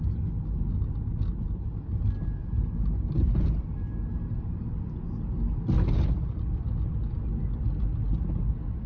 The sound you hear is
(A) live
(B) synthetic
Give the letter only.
A